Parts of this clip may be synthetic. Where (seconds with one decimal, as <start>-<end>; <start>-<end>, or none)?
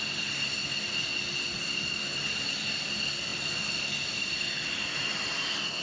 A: none